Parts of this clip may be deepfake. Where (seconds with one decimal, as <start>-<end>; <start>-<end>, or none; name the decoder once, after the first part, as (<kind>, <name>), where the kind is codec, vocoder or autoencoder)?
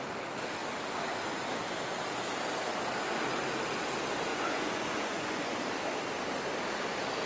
4.3-5.6 (vocoder, Vocos)